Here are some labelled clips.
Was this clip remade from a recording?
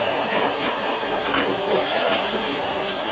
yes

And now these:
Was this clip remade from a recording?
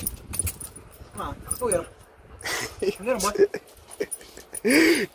no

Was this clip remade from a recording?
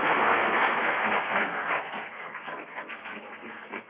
yes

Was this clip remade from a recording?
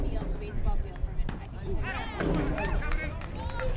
no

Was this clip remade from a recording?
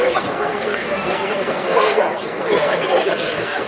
yes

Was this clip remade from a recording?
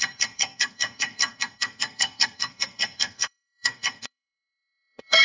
yes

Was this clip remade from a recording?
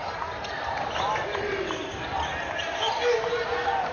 no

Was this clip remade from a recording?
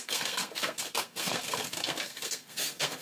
yes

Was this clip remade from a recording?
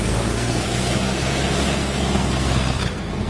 yes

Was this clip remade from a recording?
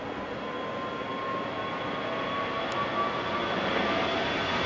no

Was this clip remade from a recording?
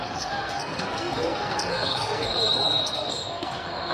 yes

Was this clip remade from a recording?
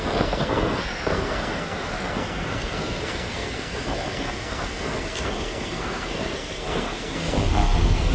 yes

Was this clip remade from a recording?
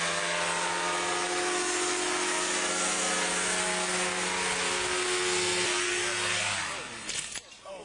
no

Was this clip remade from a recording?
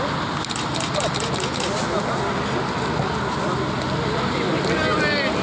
no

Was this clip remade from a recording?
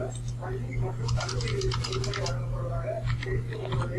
no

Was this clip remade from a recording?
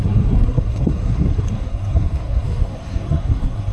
yes